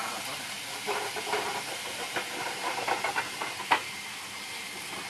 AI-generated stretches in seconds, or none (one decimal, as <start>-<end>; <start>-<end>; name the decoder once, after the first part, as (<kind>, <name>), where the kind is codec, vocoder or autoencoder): 0.8-2.8 (vocoder, BigVGAN v2)

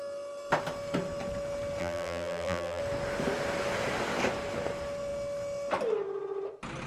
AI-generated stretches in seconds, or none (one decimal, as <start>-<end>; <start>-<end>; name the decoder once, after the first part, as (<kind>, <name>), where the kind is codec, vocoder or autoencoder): 1.8-2.8 (vocoder, BigVGAN v2)

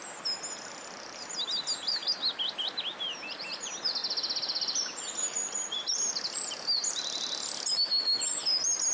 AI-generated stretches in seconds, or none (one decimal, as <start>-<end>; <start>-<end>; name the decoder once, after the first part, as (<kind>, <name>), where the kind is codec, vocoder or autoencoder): none